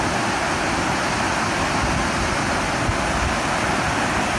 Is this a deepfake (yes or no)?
no